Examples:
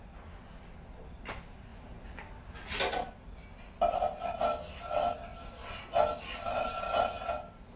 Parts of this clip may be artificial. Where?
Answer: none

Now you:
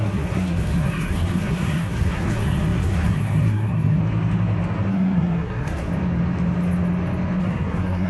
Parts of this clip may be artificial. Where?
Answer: 0.0-4.0 (codec, SNAC); 4.9-5.9; 7.4-8.1

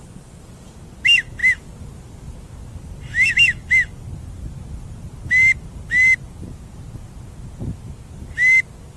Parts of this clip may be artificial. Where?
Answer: none